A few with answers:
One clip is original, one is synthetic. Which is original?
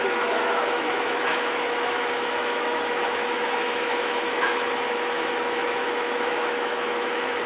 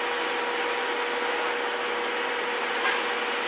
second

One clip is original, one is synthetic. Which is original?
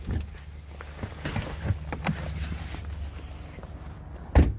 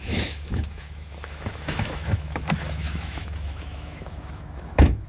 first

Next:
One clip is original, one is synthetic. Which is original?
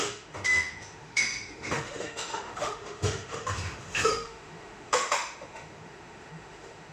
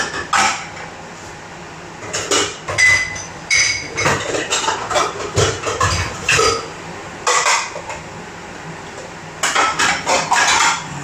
second